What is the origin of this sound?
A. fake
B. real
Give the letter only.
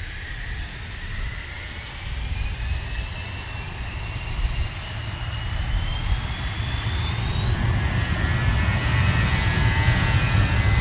B